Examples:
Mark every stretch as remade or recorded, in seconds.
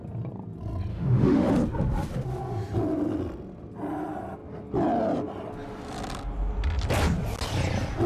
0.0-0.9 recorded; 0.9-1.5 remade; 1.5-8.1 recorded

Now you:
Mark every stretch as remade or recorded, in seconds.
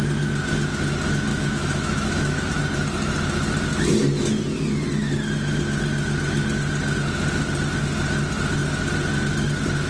0.0-1.3 recorded; 1.3-2.6 remade; 2.6-9.9 recorded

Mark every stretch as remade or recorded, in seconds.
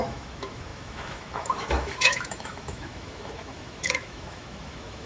0.0-5.1 remade